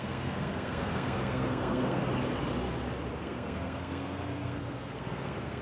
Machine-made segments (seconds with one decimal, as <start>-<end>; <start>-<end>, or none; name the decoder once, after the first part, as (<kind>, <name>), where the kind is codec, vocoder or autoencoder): 0.0-2.0 (codec, SNAC); 3.2-5.6